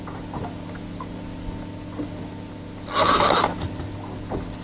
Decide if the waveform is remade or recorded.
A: recorded